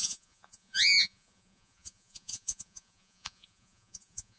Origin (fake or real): fake